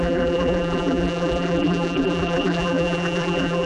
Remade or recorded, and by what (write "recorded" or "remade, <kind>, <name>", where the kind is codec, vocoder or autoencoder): remade, vocoder, BigVGAN v2